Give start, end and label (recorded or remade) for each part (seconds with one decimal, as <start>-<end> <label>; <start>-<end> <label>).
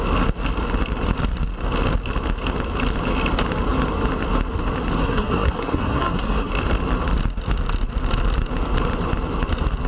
0.0-5.0 recorded; 5.0-6.5 remade; 6.5-9.9 recorded